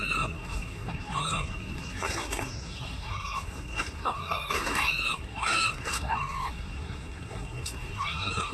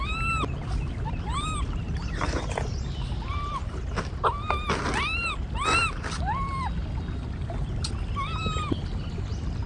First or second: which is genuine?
second